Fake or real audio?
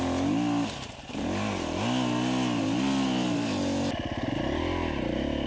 real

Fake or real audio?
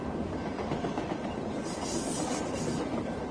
fake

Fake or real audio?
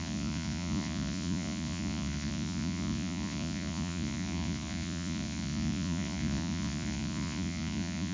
fake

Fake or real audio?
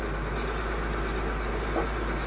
real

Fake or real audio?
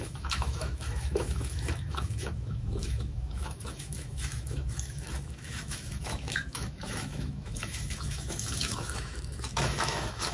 fake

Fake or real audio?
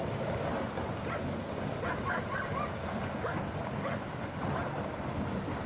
real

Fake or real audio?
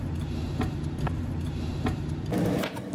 fake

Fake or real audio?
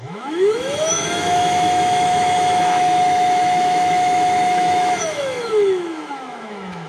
fake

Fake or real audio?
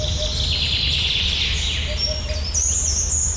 real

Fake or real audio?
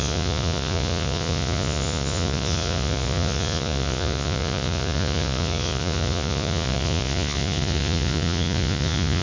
fake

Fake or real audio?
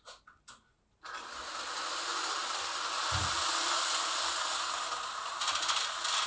real